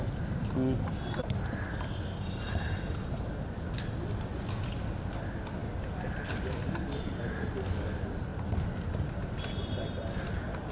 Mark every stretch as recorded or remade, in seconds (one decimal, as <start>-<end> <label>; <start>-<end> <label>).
0.0-10.7 recorded